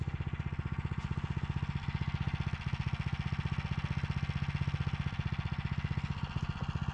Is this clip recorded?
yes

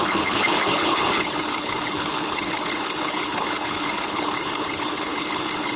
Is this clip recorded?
no